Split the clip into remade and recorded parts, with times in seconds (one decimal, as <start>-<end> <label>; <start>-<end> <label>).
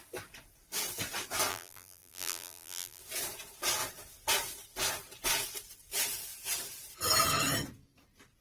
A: 0.0-1.5 recorded; 1.5-3.0 remade; 3.0-8.4 recorded